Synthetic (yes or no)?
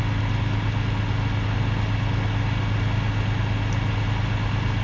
no